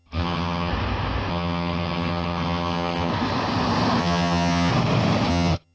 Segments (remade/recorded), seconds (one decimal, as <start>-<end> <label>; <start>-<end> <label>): 0.0-0.7 remade; 0.7-1.3 recorded; 1.3-3.1 remade; 3.1-4.0 recorded; 4.0-4.7 remade; 4.7-5.3 recorded; 5.3-5.7 remade